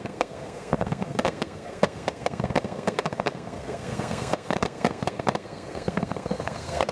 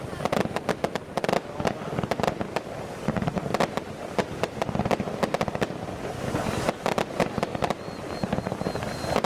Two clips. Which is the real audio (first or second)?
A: second